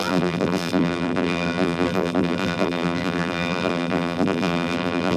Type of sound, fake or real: fake